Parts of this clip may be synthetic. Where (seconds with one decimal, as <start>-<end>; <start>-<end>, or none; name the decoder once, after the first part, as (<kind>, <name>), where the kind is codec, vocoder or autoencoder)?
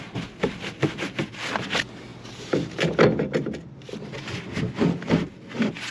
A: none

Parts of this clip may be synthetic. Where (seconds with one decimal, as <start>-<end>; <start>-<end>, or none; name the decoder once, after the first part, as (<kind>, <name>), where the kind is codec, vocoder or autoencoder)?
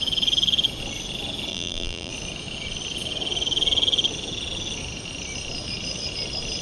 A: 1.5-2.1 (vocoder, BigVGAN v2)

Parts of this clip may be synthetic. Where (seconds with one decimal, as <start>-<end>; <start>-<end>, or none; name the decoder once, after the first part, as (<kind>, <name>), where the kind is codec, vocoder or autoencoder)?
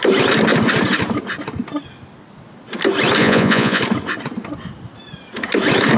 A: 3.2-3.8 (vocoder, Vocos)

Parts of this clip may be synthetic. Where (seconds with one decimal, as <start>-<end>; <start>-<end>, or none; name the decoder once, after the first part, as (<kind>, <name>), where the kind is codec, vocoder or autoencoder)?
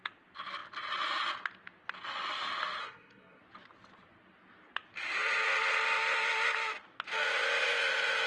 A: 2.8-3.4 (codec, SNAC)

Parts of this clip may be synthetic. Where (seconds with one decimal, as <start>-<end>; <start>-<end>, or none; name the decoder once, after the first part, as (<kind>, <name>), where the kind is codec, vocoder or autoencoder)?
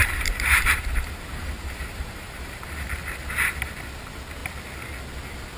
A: 0.0-2.9 (vocoder, BigVGAN v2)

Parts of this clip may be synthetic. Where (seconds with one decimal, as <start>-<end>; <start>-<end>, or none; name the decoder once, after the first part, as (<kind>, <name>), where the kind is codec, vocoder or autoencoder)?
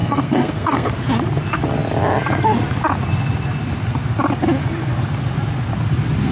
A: 0.0-0.9 (codec, SNAC)